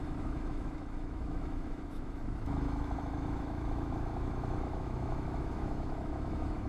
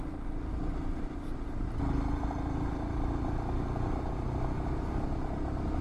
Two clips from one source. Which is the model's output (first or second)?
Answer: first